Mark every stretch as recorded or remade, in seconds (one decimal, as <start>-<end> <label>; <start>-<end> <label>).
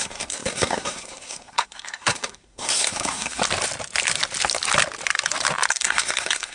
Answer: 0.0-3.4 remade; 3.4-5.7 recorded; 5.7-6.5 remade